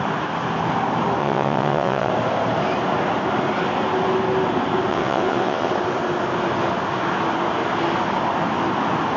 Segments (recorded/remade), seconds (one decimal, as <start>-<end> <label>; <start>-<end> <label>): 0.0-1.2 recorded; 1.2-2.1 remade; 2.1-4.9 recorded; 4.9-5.7 remade; 5.7-9.2 recorded